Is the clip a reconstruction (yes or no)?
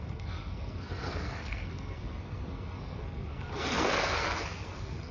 yes